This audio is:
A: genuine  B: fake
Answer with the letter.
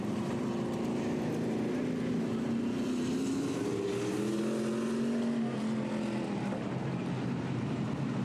A